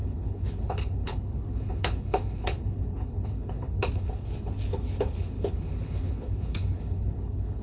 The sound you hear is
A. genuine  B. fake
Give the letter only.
B